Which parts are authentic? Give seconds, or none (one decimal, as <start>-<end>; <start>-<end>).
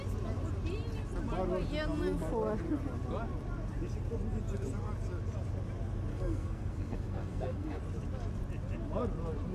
0.0-6.1; 7.8-9.5